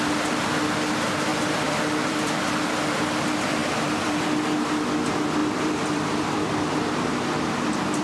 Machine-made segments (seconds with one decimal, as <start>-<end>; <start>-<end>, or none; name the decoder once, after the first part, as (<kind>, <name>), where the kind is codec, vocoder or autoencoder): 1.3-2.5 (vocoder, BigVGAN v2); 3.6-4.2; 5.4-6.5